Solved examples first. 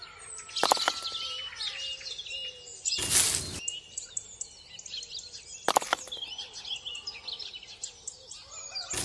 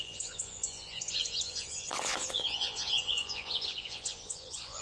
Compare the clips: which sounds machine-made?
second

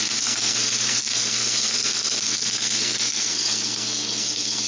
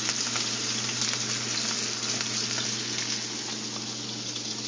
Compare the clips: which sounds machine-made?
first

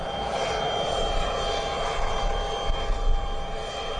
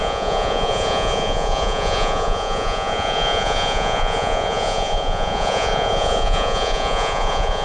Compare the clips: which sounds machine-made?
second